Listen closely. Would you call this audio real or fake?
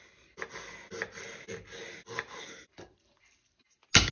real